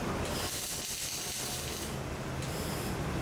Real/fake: real